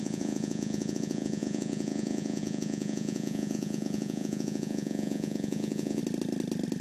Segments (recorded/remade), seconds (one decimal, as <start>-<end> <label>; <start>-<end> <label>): 0.0-6.0 remade; 6.0-6.8 recorded